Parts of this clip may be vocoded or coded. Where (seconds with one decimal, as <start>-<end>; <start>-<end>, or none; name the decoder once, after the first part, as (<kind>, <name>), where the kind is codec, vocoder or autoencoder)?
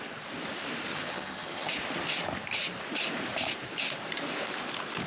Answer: 0.9-1.7 (vocoder, HiFi-GAN)